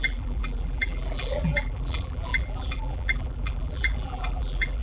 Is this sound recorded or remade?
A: remade